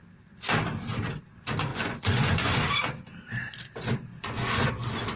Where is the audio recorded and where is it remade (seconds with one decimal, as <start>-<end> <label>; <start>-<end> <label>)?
0.0-1.7 recorded; 1.7-2.5 remade; 2.5-4.1 recorded; 4.1-4.7 remade; 4.7-5.2 recorded